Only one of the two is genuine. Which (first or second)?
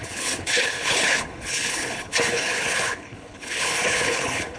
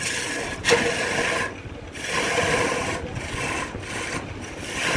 second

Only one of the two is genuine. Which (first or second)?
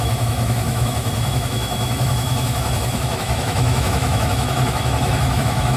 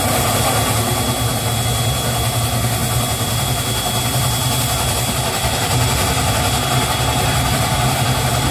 second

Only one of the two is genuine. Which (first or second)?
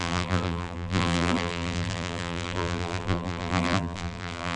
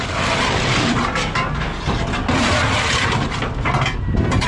second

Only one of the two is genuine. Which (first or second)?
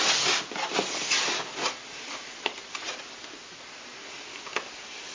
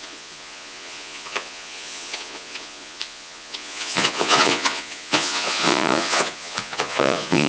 first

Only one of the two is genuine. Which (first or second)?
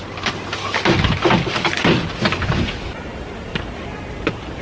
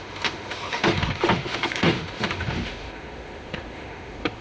first